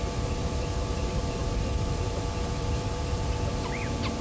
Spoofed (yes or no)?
yes